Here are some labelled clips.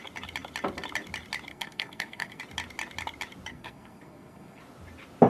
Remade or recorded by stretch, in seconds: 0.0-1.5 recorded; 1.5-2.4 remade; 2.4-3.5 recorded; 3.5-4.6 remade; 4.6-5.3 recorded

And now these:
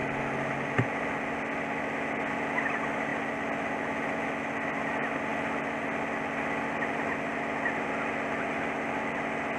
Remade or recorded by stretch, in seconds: 0.0-9.6 recorded

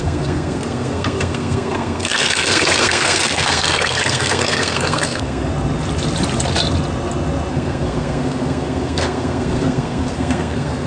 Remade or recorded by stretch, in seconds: 0.0-5.5 remade; 5.5-7.5 recorded; 7.5-10.9 remade

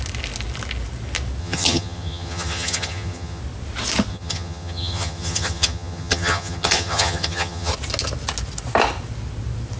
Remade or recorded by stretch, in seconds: 0.0-1.4 recorded; 1.4-3.4 remade; 3.4-4.1 recorded; 4.1-7.7 remade; 7.7-9.8 recorded

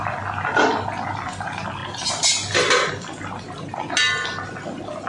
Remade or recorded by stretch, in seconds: 0.0-5.1 recorded

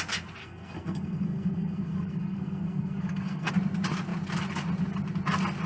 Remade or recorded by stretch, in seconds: 0.0-0.4 recorded; 0.4-3.5 remade; 3.5-5.7 recorded

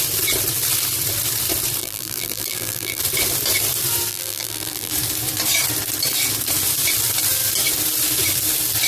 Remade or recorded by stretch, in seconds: 0.0-1.8 recorded; 1.8-3.0 remade; 3.0-4.1 recorded; 4.1-4.9 remade; 4.9-8.9 recorded

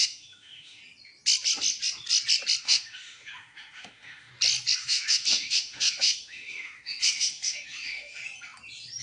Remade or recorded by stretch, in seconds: 0.0-0.8 remade; 0.8-2.6 recorded; 2.6-4.3 remade; 4.3-4.8 recorded; 4.8-8.2 remade; 8.2-9.0 recorded